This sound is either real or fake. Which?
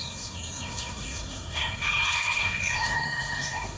fake